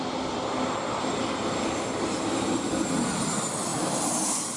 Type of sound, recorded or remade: recorded